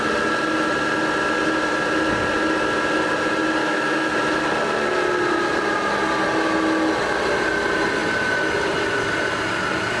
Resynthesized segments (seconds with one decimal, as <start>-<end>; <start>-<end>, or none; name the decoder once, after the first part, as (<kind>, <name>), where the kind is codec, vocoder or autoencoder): 3.6-4.1 (autoencoder, DAC-VAE)